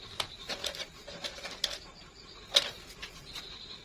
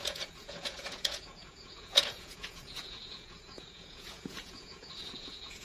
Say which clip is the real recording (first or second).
first